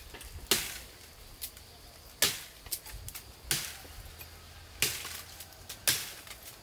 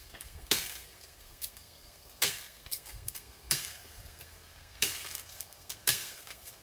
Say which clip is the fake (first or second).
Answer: second